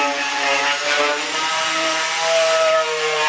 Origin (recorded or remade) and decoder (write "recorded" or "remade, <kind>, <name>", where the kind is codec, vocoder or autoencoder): remade, vocoder, BigVGAN v2